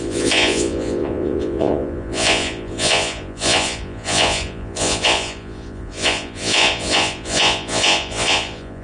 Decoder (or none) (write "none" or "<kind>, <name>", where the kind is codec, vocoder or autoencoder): vocoder, Vocos